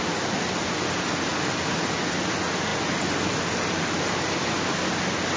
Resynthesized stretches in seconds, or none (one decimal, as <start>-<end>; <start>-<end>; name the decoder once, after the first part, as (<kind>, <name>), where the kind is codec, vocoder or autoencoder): none